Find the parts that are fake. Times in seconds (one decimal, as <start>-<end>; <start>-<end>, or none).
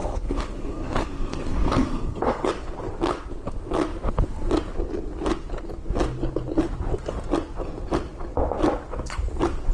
0.0-2.5